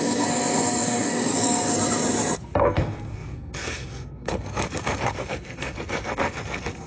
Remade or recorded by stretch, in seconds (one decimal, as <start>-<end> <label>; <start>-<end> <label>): 0.0-1.7 remade; 1.7-2.6 recorded; 2.6-6.9 remade